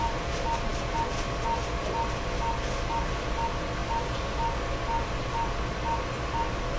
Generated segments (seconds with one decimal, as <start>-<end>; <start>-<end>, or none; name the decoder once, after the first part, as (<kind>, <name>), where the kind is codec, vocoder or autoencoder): none